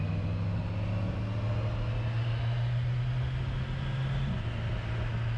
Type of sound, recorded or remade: recorded